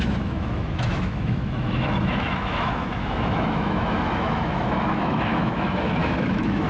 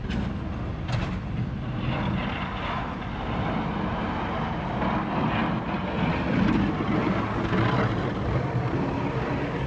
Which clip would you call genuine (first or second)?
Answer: second